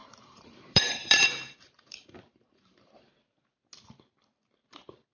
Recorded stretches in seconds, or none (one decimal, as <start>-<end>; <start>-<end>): 2.2-5.1